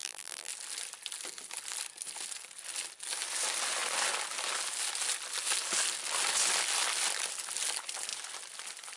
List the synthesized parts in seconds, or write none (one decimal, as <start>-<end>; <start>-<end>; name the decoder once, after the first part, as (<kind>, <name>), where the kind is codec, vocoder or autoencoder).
0.0-0.5 (vocoder, BigVGAN v2)